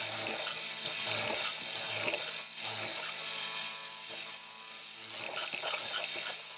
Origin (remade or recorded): recorded